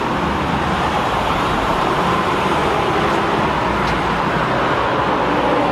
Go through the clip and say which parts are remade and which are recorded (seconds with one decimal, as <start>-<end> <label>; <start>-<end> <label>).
0.0-0.9 recorded; 0.9-2.6 remade; 2.6-5.7 recorded